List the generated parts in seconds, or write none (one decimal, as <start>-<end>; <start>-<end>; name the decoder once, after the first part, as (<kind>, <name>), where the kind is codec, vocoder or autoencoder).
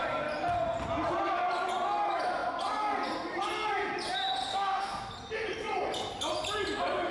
4.5-5.1 (codec, SNAC)